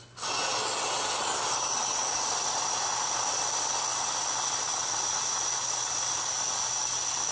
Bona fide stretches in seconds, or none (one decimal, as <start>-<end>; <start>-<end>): 0.0-7.3